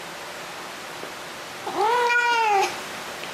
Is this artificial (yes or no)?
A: no